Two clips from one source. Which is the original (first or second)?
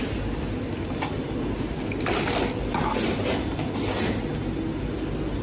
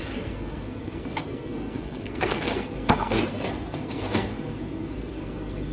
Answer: first